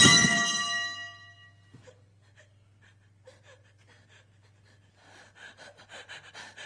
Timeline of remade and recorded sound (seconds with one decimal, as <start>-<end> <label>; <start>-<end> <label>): 0.0-6.7 recorded